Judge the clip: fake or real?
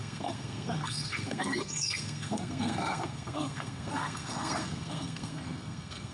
fake